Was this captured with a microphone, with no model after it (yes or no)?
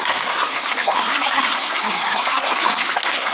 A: no